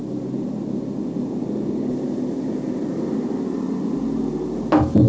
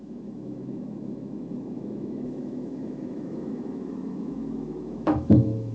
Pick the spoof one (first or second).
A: second